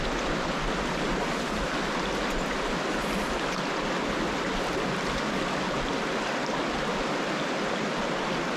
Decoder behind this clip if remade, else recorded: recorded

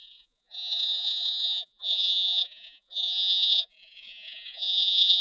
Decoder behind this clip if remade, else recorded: remade, vocoder, Vocos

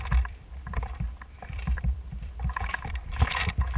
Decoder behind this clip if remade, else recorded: remade, vocoder, BigVGAN v2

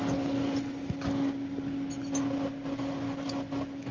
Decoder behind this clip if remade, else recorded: recorded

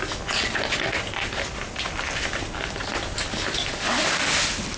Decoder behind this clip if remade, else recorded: recorded